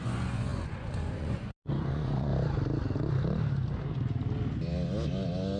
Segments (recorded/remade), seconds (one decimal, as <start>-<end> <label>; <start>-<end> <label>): 0.0-2.3 remade; 2.3-5.6 recorded

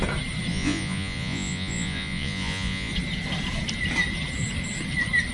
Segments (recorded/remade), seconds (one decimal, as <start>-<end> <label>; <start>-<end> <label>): 0.0-0.5 recorded; 0.5-2.9 remade; 2.9-5.3 recorded

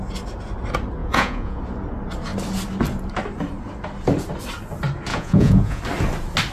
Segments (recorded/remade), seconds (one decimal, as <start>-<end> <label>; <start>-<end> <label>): 0.0-1.0 recorded; 1.0-1.6 remade; 1.6-5.1 recorded; 5.1-5.8 remade; 5.8-6.5 recorded

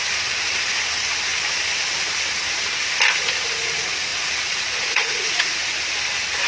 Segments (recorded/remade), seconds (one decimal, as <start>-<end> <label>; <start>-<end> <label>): 0.0-4.1 recorded; 4.1-5.5 remade; 5.5-6.5 recorded

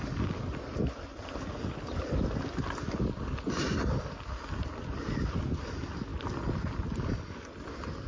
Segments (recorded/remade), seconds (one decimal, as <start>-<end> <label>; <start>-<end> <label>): 0.0-8.1 recorded

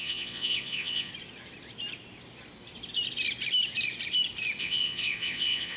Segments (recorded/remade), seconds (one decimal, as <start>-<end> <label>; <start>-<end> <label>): 0.0-1.1 remade; 1.1-4.6 recorded; 4.6-5.8 remade

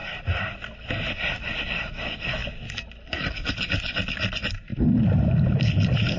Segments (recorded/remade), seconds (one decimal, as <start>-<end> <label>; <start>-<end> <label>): 0.0-6.2 recorded

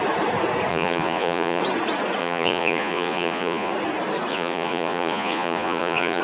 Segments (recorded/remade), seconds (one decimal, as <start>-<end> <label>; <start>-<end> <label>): 0.0-0.7 recorded; 0.7-1.6 remade; 1.6-2.2 recorded; 2.2-3.7 remade; 3.7-4.3 recorded; 4.3-6.2 remade